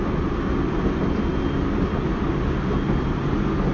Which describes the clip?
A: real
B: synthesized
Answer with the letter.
A